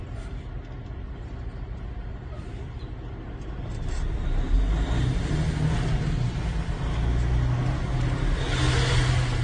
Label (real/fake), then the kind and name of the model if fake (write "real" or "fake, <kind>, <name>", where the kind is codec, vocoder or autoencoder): real